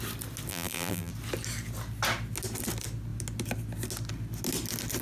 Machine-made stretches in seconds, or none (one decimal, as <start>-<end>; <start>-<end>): 0.5-1.1